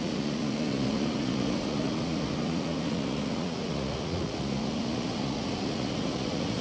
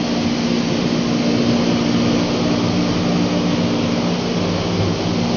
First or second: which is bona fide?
second